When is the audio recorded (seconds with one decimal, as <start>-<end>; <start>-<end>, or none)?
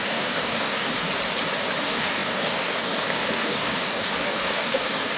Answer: 0.9-1.8